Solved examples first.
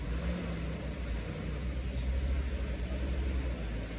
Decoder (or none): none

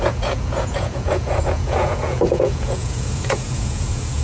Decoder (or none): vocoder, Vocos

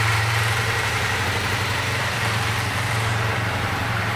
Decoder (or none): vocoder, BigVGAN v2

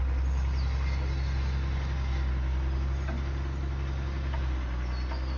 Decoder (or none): none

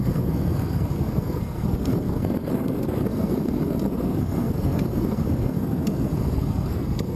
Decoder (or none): codec, SNAC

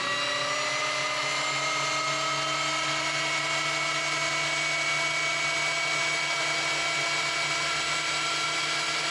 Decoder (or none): none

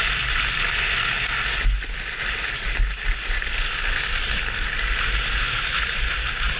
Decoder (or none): none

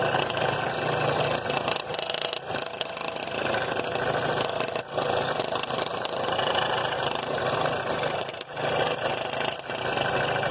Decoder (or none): none